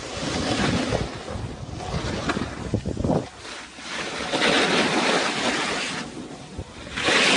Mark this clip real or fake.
real